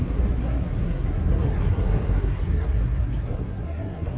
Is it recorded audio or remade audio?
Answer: remade